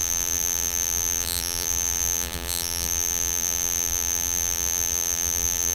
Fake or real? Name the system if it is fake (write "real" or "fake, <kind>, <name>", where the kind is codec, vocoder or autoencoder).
fake, vocoder, BigVGAN v2